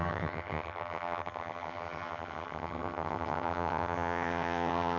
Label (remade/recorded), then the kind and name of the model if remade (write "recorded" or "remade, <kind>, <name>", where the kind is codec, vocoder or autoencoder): remade, vocoder, HiFi-GAN